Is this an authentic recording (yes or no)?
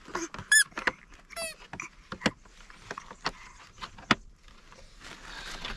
yes